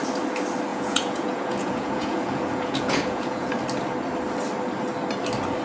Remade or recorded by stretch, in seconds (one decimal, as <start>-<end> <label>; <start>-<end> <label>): 0.0-0.7 recorded; 0.7-3.5 remade; 3.5-5.6 recorded